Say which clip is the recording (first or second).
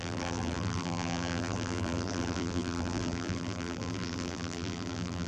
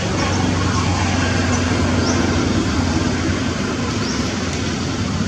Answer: second